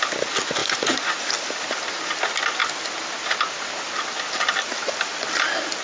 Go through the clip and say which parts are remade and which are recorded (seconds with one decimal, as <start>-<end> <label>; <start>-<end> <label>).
0.0-0.6 recorded; 0.6-1.3 remade; 1.3-5.8 recorded